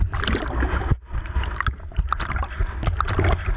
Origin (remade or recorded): recorded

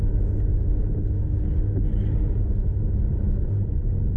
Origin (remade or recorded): recorded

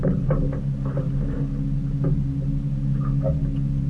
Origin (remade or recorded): recorded